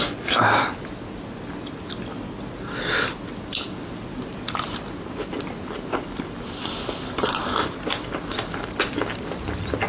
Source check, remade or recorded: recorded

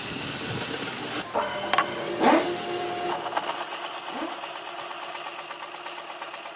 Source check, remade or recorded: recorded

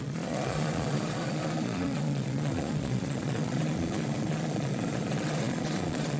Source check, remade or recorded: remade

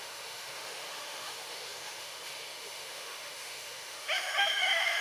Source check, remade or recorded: remade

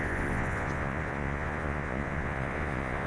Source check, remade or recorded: remade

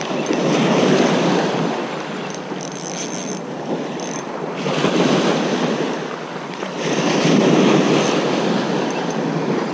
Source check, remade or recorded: recorded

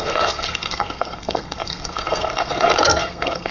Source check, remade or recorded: remade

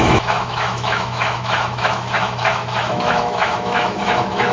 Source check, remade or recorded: remade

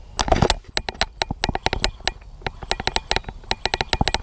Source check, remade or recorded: recorded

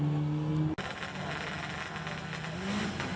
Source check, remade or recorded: recorded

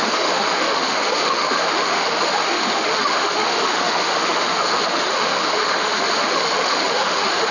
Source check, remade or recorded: remade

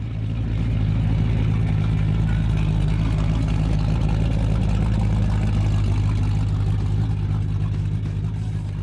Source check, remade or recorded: recorded